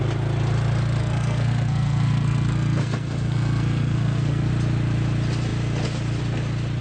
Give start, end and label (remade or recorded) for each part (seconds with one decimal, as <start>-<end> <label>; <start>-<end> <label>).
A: 0.0-1.0 recorded; 1.0-4.5 remade; 4.5-6.8 recorded